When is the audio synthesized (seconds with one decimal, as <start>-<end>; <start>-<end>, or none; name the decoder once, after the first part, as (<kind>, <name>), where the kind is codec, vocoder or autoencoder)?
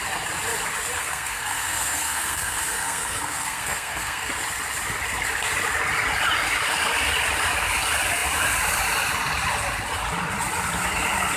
1.0-4.3 (codec, SNAC)